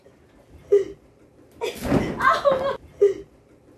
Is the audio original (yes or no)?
yes